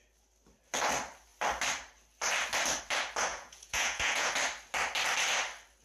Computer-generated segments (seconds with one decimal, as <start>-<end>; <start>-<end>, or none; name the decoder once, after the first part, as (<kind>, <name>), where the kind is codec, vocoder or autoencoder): 3.3-4.3 (vocoder, Vocos)